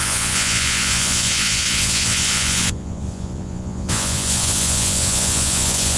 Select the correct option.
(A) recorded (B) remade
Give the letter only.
B